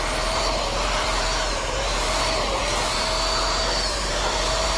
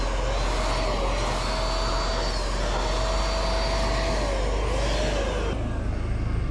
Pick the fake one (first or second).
first